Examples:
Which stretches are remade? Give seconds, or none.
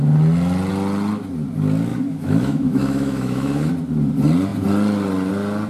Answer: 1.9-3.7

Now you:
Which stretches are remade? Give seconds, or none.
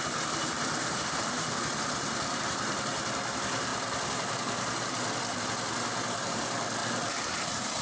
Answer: 0.8-1.6